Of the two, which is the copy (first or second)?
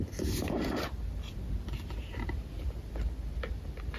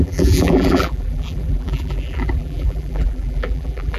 second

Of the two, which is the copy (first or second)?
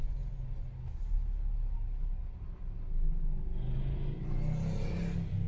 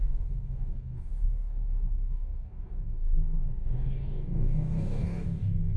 second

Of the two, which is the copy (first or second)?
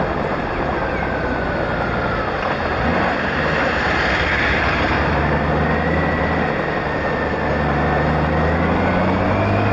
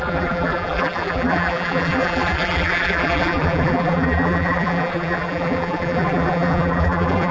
second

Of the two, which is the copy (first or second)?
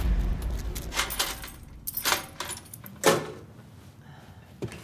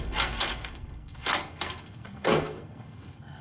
second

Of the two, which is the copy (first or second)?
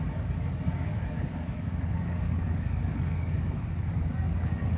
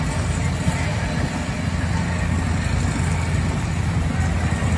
first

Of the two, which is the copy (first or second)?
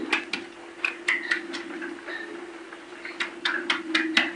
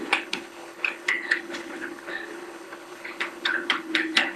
second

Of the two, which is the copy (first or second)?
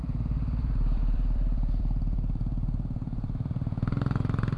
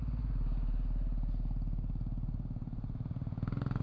first